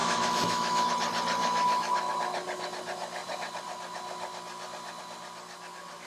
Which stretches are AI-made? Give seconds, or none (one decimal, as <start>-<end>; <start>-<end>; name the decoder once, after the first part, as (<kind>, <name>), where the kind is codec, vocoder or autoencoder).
0.0-0.9 (autoencoder, DAC-VAE); 1.4-2.1